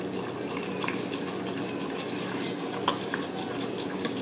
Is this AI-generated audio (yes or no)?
no